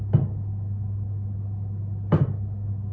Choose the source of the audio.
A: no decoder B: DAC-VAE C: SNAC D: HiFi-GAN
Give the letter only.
A